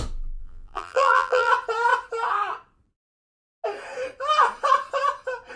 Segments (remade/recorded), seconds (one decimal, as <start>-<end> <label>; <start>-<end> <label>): 0.0-0.4 recorded; 0.4-1.5 remade; 1.5-5.6 recorded